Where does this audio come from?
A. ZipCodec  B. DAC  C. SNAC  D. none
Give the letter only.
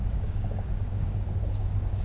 B